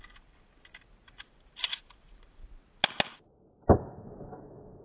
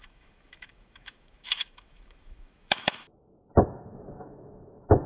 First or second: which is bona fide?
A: first